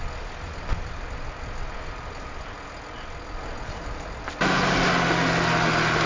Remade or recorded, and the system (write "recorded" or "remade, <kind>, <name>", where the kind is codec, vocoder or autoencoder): recorded